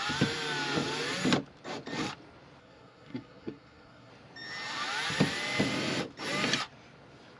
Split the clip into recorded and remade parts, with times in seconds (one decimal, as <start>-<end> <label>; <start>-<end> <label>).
0.0-2.6 recorded; 2.6-4.1 remade; 4.1-7.4 recorded

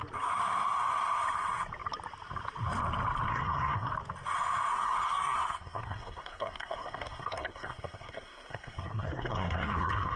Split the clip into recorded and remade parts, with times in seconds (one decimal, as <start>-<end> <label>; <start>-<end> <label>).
0.0-3.3 recorded; 3.3-3.9 remade; 3.9-4.7 recorded; 4.7-10.2 remade

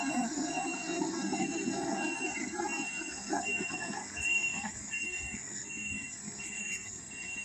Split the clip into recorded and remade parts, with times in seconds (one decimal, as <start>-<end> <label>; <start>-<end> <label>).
0.0-7.4 remade

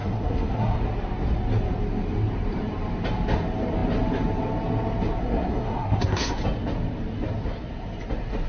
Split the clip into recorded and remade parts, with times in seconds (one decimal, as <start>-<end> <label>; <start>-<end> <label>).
0.0-0.8 remade; 0.8-5.2 recorded; 5.2-6.4 remade; 6.4-8.5 recorded

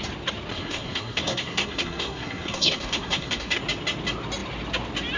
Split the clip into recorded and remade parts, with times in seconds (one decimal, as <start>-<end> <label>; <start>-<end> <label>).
0.0-0.5 recorded; 0.5-3.6 remade; 3.6-5.2 recorded

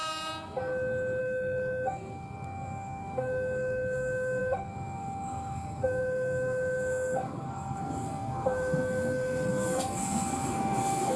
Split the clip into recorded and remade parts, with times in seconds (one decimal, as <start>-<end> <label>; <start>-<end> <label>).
0.0-1.2 recorded; 1.2-11.2 remade

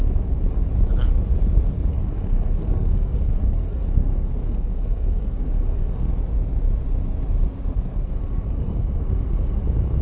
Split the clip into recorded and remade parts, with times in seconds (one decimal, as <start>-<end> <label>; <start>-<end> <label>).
0.0-1.9 recorded; 1.9-6.1 remade; 6.1-7.7 recorded; 7.7-9.6 remade; 9.6-10.0 recorded

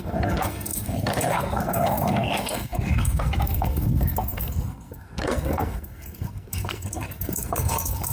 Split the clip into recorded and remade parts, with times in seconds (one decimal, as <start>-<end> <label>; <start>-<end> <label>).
0.0-8.1 remade